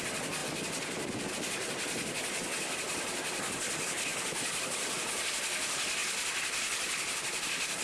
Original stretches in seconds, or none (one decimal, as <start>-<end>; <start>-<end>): 0.0-4.1; 5.3-6.0; 7.2-7.8